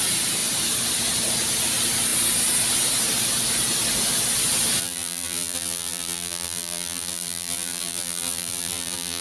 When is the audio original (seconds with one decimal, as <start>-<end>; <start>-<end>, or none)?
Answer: 0.0-4.8